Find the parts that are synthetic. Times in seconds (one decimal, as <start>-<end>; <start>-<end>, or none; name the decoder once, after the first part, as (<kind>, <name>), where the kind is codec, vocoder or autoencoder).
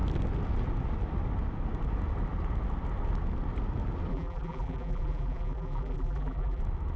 4.1-6.6 (vocoder, BigVGAN v2)